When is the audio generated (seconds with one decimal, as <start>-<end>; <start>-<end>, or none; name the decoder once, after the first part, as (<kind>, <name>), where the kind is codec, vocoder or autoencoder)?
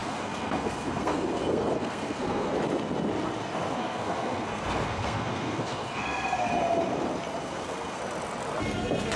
0.0-2.5 (codec, SNAC); 3.8-6.5; 7.4-8.0